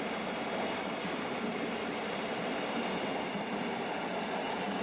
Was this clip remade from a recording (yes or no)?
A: no